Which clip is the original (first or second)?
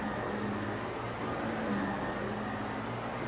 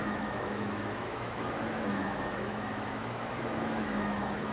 first